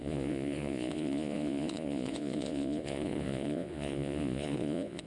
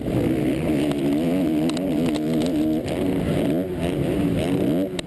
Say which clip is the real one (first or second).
second